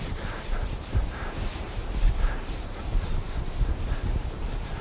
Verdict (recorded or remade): remade